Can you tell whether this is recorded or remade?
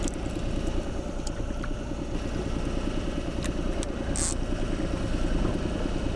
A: recorded